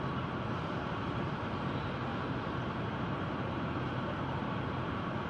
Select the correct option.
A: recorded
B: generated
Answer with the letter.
B